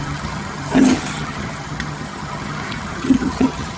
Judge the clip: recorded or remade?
remade